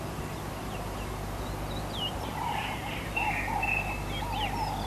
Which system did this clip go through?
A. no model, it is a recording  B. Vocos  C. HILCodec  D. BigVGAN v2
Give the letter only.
D